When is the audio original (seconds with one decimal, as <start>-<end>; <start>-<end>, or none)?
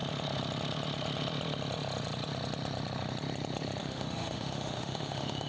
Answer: 0.0-3.8